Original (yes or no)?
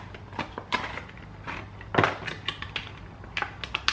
yes